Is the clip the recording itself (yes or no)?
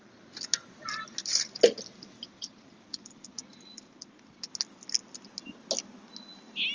yes